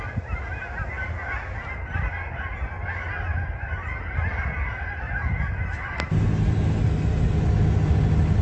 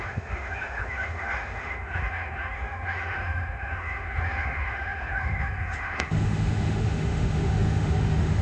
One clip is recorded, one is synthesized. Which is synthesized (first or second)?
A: second